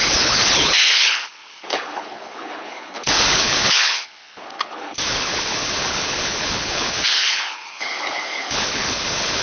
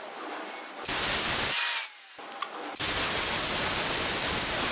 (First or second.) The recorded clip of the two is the second